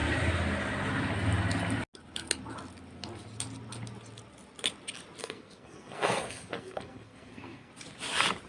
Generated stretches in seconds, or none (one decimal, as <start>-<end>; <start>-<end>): 5.2-7.7